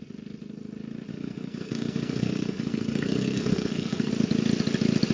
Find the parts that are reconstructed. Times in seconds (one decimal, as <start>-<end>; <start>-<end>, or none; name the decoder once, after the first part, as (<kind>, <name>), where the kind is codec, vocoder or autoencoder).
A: 1.1-4.1 (codec, SNAC)